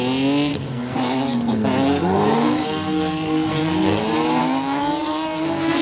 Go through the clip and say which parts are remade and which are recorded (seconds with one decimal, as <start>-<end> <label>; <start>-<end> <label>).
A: 0.0-0.5 recorded; 0.5-4.0 remade; 4.0-4.4 recorded; 4.4-5.8 remade

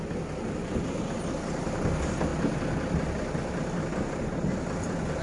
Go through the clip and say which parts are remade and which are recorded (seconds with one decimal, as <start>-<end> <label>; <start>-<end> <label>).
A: 0.0-5.2 recorded

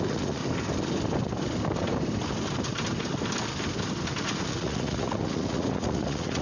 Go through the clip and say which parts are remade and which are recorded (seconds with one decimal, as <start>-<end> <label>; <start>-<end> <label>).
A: 0.0-0.4 remade; 0.4-4.2 recorded; 4.2-6.4 remade

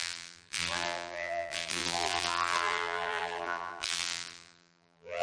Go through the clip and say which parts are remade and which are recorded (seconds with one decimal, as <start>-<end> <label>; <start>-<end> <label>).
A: 0.0-5.2 remade

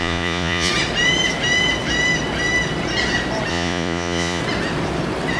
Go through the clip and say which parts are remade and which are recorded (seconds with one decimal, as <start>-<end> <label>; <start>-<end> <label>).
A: 0.0-0.7 remade; 0.7-3.5 recorded; 3.5-4.4 remade; 4.4-5.4 recorded

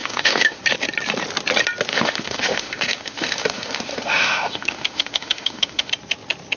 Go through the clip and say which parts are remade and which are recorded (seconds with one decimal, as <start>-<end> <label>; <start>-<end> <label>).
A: 0.0-0.6 remade; 0.6-1.9 recorded; 1.9-5.9 remade; 5.9-6.6 recorded

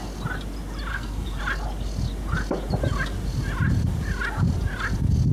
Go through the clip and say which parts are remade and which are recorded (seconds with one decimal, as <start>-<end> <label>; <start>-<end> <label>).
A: 0.0-0.9 recorded; 0.9-1.4 remade; 1.4-5.3 recorded

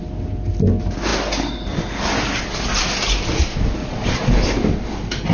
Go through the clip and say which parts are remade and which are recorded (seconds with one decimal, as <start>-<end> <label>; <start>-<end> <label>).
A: 0.0-3.8 recorded; 3.8-4.3 remade; 4.3-5.3 recorded